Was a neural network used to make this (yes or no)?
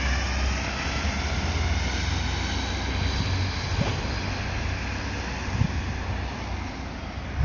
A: no